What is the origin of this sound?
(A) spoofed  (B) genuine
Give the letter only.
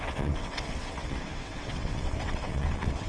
A